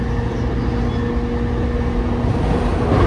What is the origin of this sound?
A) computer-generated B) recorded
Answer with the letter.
B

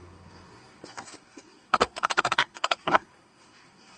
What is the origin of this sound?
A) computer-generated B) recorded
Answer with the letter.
A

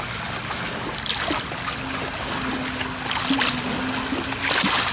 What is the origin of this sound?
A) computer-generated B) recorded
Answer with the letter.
B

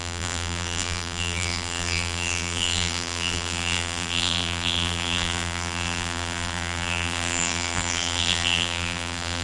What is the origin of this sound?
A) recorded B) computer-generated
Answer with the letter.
B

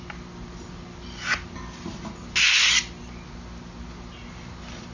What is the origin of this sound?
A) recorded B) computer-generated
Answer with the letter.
A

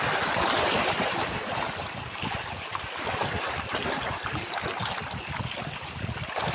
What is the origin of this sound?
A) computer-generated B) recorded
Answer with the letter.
B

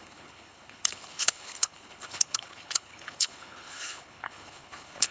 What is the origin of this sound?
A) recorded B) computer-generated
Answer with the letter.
B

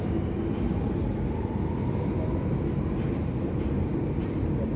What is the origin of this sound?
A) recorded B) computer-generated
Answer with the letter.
A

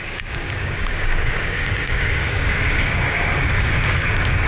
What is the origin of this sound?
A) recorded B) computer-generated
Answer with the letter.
B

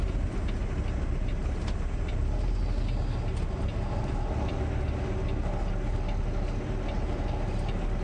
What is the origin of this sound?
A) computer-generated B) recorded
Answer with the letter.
B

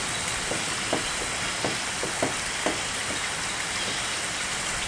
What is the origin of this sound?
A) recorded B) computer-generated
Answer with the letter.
A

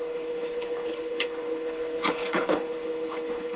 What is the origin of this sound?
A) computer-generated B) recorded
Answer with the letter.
A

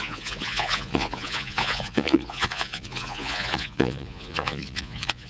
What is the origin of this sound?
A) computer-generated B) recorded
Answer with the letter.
A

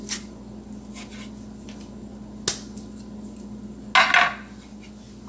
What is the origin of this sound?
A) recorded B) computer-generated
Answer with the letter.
A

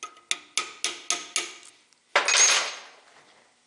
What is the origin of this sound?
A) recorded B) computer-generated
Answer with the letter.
A